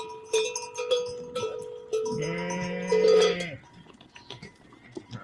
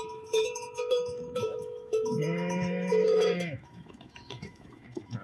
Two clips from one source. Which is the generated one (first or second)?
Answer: second